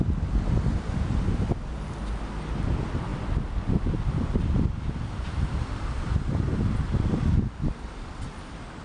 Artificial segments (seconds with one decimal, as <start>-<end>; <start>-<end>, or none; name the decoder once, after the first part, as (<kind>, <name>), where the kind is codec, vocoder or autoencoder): none

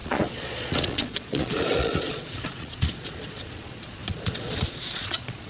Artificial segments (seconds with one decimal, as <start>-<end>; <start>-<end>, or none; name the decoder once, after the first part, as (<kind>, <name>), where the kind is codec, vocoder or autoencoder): 0.0-5.5 (vocoder, Vocos)